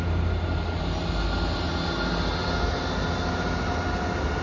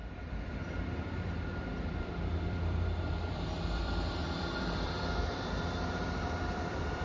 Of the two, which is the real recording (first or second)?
first